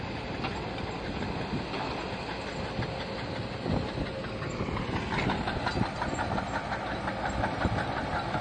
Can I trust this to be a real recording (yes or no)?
yes